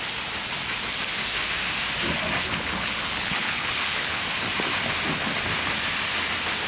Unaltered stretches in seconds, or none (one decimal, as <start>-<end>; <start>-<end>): 0.0-2.4; 4.2-6.7